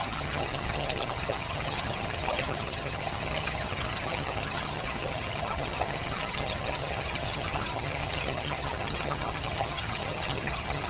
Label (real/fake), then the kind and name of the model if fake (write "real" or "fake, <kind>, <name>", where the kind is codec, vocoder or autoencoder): fake, vocoder, HiFi-GAN